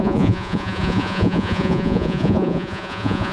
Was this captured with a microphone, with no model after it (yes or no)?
no